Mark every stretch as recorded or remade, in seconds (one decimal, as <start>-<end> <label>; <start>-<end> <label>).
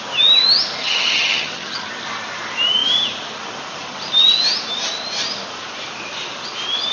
0.0-0.8 recorded; 0.8-1.9 remade; 1.9-6.9 recorded